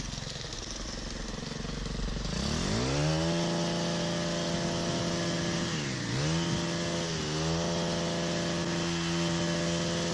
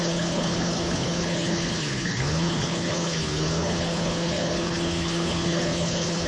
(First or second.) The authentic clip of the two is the first